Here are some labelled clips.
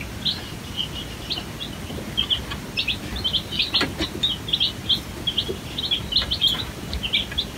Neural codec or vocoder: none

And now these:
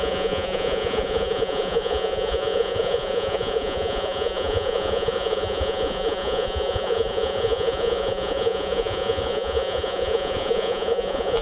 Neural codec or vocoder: vocoder, Vocos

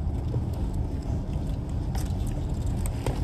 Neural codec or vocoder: none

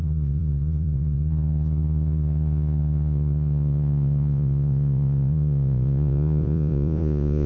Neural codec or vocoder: vocoder, Vocos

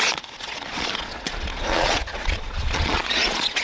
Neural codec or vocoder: vocoder, Vocos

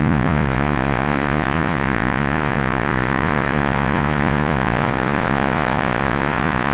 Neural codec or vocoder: vocoder, Vocos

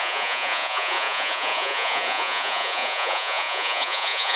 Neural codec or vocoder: vocoder, Vocos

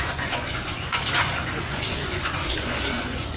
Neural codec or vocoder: vocoder, Vocos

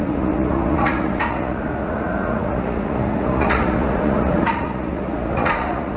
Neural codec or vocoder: vocoder, Vocos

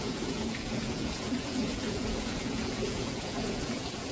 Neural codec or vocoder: vocoder, Vocos